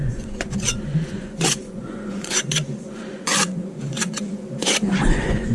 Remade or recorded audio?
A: remade